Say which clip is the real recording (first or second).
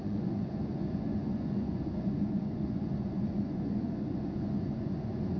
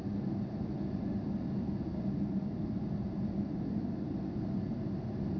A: second